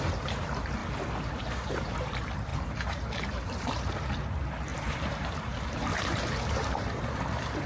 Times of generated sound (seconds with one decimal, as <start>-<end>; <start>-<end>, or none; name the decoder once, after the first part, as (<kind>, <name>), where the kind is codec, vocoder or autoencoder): 0.0-0.8 (vocoder, BigVGAN v2); 1.3-7.7